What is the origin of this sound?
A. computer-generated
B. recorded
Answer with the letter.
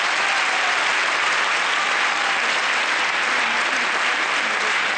B